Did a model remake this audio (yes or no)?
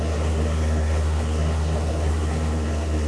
yes